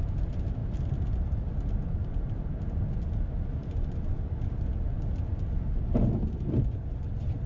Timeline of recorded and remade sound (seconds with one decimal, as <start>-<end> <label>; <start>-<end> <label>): 0.0-7.5 recorded